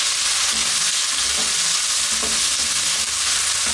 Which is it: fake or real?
real